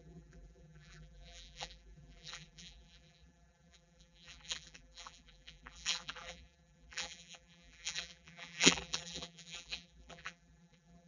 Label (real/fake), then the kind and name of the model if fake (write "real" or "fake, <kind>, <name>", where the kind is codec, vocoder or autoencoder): fake, vocoder, BigVGAN v2